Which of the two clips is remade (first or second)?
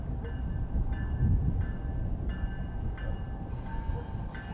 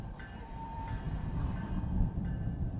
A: second